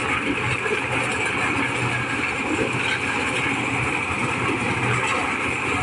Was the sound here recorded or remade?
recorded